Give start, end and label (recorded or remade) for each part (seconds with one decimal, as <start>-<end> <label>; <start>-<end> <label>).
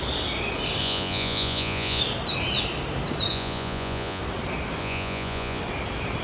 0.0-0.8 recorded; 0.8-2.0 remade; 2.0-3.3 recorded; 3.3-4.2 remade; 4.2-4.8 recorded; 4.8-5.6 remade; 5.6-6.2 recorded